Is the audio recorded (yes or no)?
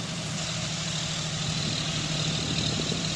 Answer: yes